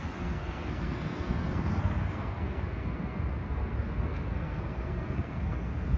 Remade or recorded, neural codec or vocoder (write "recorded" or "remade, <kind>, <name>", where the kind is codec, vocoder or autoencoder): remade, codec, SNAC